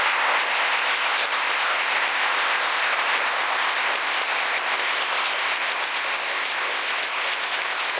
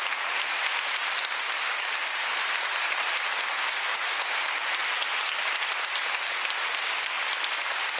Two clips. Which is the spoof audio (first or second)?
first